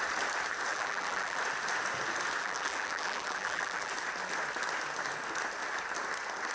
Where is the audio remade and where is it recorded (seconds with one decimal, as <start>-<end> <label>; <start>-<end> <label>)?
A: 0.0-0.7 recorded; 0.7-1.4 remade; 1.4-2.4 recorded; 2.4-3.9 remade; 3.9-6.5 recorded